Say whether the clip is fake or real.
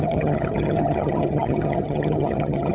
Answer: fake